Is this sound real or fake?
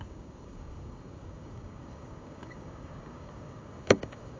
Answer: fake